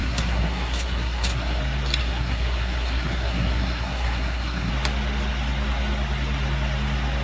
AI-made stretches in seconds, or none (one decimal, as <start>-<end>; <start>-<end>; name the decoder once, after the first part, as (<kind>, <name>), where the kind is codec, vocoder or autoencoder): 0.0-1.6 (codec, SNAC); 2.0-4.7